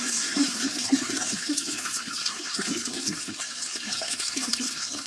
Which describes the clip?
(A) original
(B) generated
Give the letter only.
B